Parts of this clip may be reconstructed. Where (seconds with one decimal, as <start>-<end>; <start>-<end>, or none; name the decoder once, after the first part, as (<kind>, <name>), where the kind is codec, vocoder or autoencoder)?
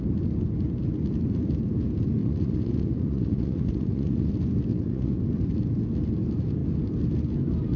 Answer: 2.2-4.3 (vocoder, Vocos); 4.7-5.2